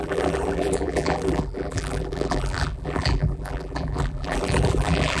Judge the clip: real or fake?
fake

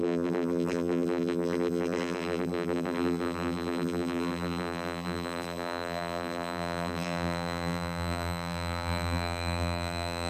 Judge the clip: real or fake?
fake